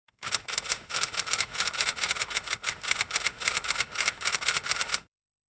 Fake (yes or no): yes